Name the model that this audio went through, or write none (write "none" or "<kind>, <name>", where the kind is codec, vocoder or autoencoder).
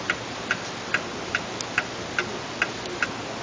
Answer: none